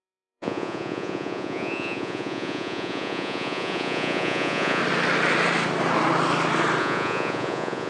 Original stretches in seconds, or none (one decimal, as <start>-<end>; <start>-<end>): 4.8-6.8

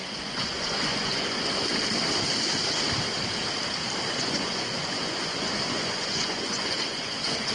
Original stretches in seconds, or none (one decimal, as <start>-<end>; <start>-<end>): 1.5-4.1

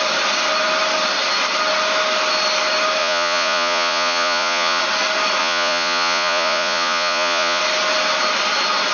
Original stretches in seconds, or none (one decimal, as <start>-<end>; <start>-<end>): 0.0-3.0; 4.8-5.4; 7.6-8.9